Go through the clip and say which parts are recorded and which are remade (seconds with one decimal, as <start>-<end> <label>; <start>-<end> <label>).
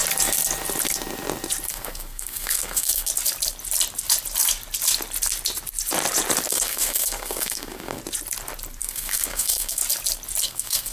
0.0-1.7 recorded; 1.7-3.1 remade; 3.1-6.5 recorded; 6.5-8.0 remade; 8.0-8.8 recorded; 8.8-9.8 remade; 9.8-10.4 recorded; 10.4-10.9 remade